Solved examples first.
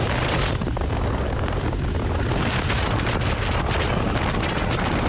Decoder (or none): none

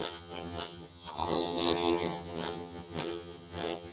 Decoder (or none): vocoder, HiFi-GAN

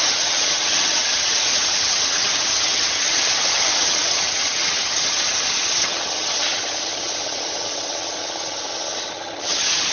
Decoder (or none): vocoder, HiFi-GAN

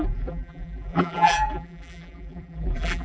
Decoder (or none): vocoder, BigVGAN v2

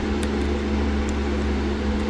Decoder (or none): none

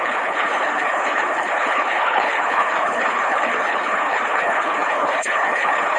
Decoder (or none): codec, HILCodec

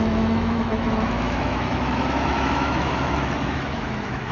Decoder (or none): autoencoder, DAC-VAE